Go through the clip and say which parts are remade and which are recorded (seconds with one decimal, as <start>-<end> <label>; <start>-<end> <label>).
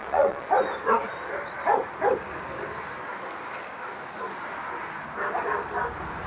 0.0-0.5 remade; 0.5-6.3 recorded